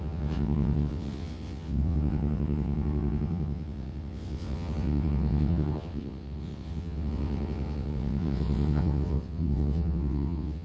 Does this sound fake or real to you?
fake